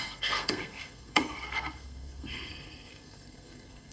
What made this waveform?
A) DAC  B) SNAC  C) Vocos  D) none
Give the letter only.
B